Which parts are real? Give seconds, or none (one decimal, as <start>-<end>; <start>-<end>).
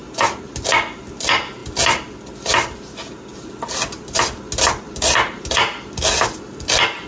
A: 0.0-7.1